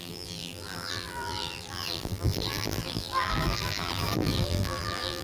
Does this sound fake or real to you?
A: fake